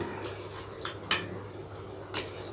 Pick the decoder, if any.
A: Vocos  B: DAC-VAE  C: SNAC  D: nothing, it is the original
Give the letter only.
D